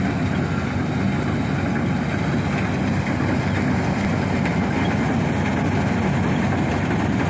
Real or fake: real